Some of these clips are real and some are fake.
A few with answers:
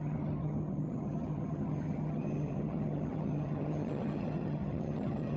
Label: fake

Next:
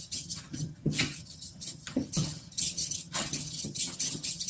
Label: fake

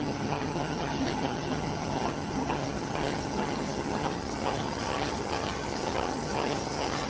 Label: fake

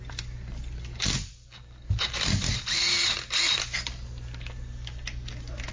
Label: real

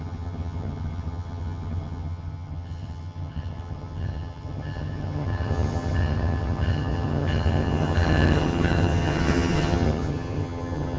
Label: fake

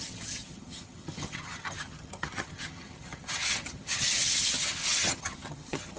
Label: fake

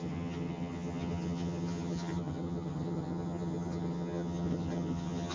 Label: fake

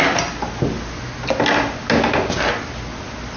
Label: real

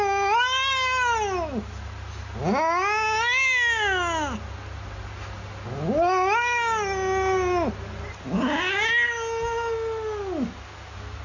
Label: real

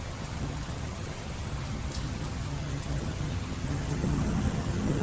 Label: fake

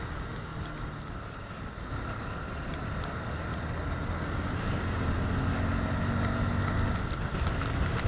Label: real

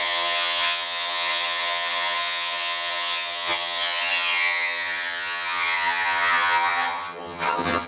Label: fake